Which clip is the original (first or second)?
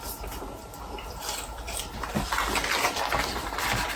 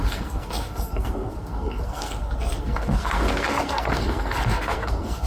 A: first